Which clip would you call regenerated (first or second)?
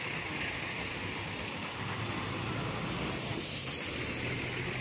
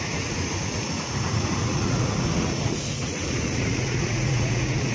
second